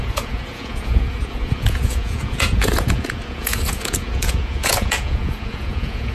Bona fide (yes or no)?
no